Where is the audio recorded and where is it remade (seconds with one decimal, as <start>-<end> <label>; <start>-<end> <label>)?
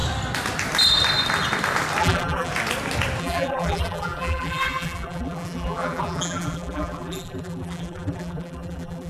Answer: 0.0-2.0 recorded; 2.0-2.5 remade; 2.5-3.2 recorded; 3.2-9.1 remade